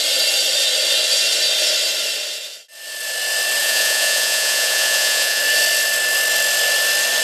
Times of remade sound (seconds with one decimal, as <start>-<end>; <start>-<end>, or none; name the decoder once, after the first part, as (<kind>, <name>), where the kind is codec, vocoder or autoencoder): 3.6-5.4 (vocoder, Vocos)